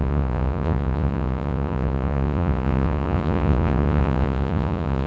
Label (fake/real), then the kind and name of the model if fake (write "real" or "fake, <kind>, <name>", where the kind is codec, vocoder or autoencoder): fake, vocoder, Vocos